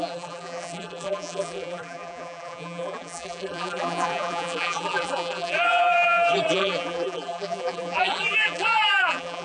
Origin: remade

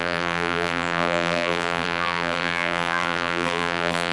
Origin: remade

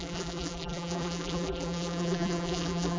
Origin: remade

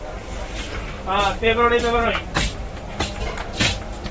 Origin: recorded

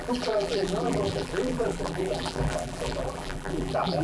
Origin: remade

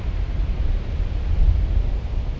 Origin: recorded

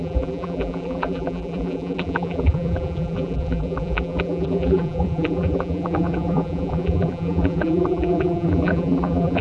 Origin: remade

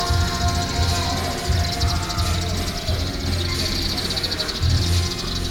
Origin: recorded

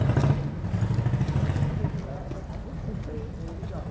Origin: recorded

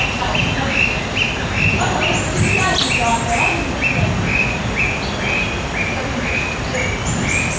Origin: recorded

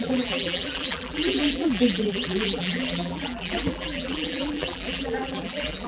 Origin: remade